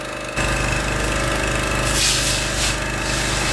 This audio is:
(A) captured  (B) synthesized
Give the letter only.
A